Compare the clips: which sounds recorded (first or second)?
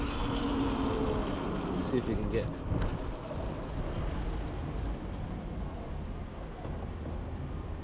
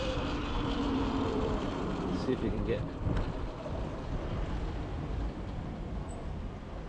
first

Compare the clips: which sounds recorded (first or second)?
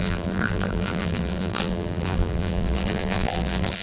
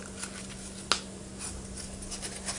second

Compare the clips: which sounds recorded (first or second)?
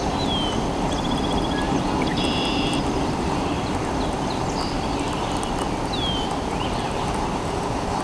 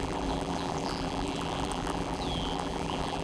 first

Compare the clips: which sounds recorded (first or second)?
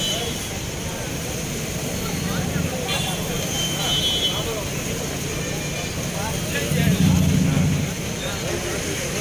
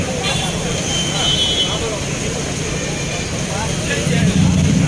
first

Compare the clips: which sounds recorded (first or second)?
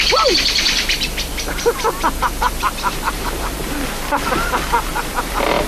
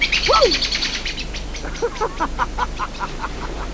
second